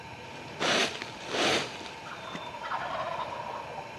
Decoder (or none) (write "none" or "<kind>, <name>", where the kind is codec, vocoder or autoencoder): vocoder, BigVGAN v2